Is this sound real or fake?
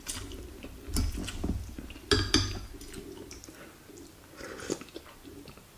real